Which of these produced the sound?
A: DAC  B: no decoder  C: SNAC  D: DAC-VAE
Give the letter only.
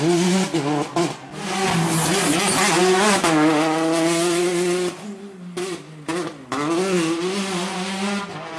B